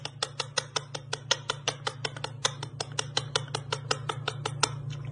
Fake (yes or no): no